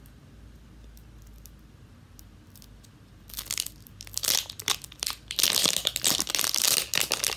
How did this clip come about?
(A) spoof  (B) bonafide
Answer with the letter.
B